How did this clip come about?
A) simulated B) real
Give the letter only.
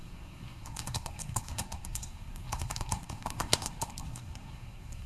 A